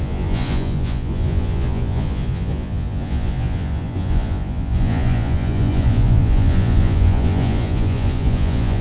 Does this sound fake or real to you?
fake